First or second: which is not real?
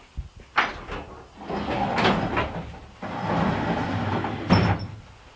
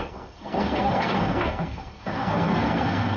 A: second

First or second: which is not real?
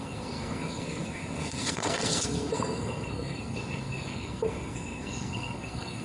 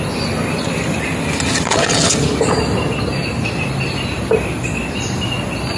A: first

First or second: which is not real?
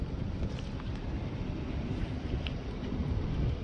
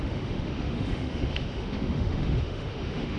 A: second